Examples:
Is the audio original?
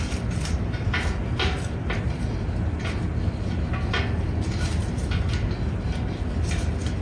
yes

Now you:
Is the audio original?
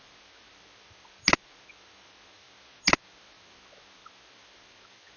yes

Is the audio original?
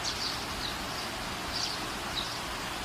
yes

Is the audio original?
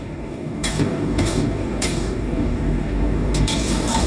no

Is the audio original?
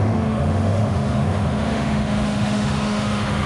no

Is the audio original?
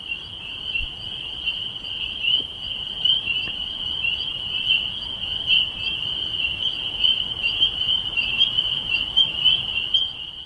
yes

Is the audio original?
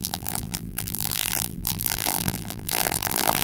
no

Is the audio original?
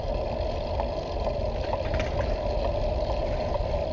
yes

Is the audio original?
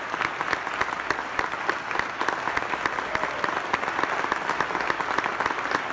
yes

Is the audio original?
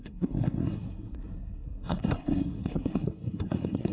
no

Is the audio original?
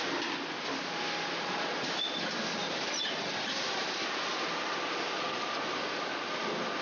yes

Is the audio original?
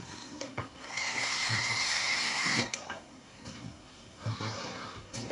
no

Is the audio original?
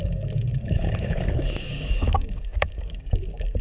no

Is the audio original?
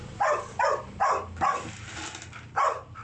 no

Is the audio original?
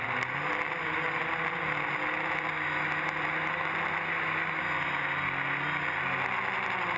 yes